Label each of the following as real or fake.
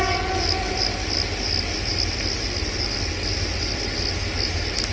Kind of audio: real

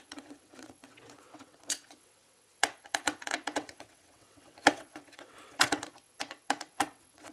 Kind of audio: fake